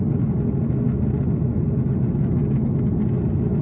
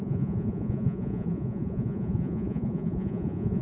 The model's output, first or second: second